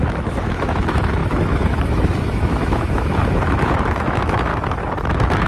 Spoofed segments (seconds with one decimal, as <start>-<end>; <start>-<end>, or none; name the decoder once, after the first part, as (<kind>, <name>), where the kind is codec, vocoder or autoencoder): 0.0-4.5 (autoencoder, DAC-VAE); 5.1-5.5